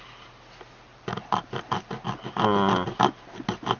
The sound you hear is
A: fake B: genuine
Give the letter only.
B